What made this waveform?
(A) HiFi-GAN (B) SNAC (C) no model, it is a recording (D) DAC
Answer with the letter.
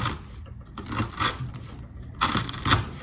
C